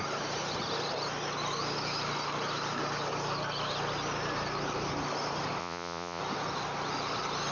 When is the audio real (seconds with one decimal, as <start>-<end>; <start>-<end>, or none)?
0.0-5.6; 6.2-7.5